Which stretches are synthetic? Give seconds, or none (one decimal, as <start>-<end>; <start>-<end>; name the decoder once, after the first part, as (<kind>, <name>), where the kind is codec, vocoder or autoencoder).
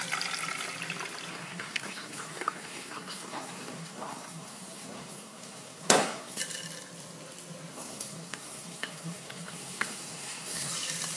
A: 1.3-6.4 (codec, SNAC); 7.7-10.7